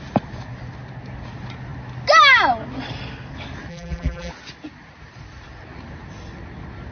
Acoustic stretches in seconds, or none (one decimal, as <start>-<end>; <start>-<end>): 0.0-3.7; 4.3-6.9